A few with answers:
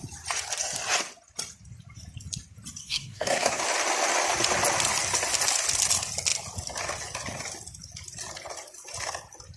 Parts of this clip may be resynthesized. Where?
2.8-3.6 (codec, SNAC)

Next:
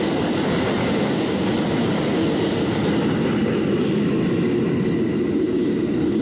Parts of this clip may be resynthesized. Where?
0.8-1.5 (codec, DAC)